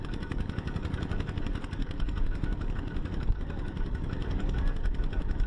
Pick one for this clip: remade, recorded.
remade